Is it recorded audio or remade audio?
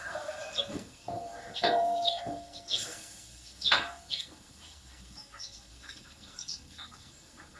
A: remade